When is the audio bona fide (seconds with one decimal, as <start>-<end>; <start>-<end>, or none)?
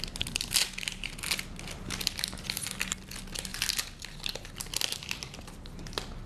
0.0-6.3